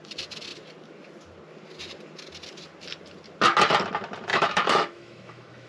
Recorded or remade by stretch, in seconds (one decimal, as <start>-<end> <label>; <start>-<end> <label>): 0.0-4.3 recorded; 4.3-5.7 remade